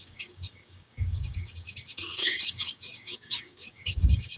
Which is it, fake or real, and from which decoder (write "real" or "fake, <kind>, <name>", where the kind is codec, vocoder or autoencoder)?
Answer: fake, codec, DAC